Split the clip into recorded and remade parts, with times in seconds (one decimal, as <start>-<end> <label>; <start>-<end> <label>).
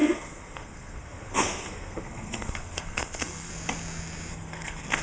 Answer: 0.0-3.5 remade; 3.5-4.3 recorded; 4.3-5.0 remade